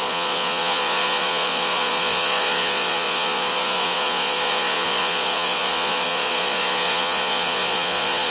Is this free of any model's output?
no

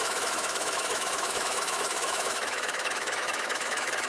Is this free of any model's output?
no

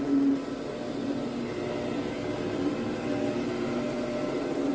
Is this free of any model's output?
yes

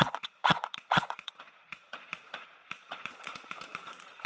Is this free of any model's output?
no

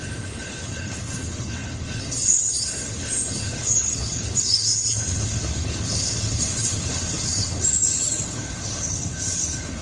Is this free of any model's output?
no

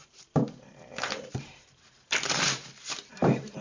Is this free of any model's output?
no